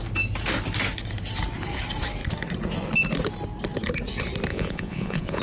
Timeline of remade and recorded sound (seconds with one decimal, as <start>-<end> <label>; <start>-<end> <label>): 0.0-4.5 recorded; 4.5-5.4 remade